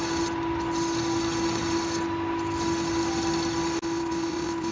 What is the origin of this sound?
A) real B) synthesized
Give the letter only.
A